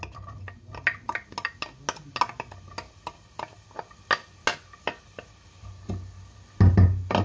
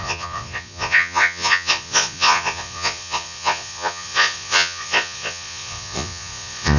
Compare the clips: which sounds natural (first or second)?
first